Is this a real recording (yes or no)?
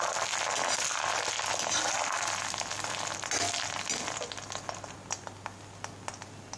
yes